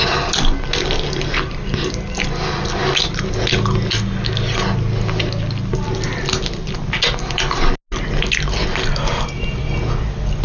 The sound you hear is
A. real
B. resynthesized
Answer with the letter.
A